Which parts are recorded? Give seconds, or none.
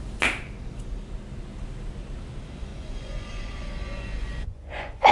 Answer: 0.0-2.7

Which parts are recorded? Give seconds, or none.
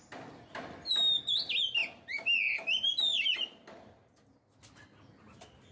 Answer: 0.0-5.7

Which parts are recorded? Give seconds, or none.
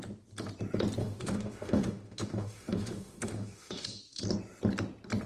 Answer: 0.0-1.0; 4.2-5.3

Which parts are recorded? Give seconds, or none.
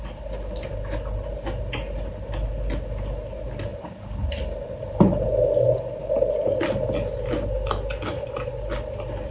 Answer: 0.0-9.3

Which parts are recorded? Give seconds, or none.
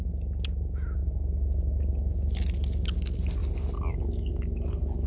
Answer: 0.0-5.1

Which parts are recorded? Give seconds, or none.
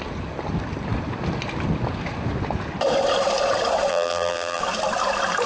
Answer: 0.0-3.9; 4.6-5.5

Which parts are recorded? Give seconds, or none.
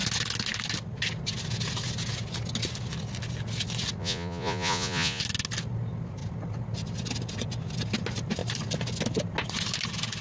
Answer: 0.0-4.0; 5.2-10.2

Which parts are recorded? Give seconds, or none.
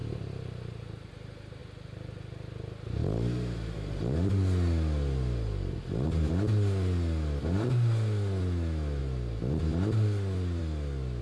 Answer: 0.0-11.2